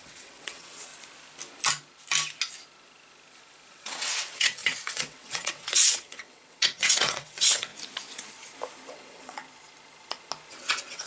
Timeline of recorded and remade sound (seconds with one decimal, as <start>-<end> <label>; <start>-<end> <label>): 0.0-0.9 remade; 0.9-3.7 recorded; 3.7-7.7 remade; 7.7-8.9 recorded; 8.9-9.4 remade; 9.4-10.5 recorded; 10.5-11.1 remade